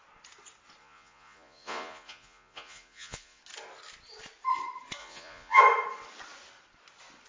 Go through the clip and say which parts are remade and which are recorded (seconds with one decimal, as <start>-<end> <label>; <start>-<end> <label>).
0.0-0.8 recorded; 0.8-3.4 remade; 3.4-5.0 recorded; 5.0-5.6 remade; 5.6-7.3 recorded